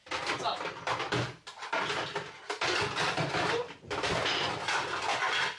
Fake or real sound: real